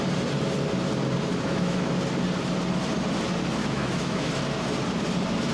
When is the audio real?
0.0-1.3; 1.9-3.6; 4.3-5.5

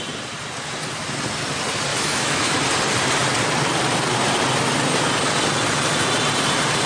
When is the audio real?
0.0-1.9; 2.6-6.9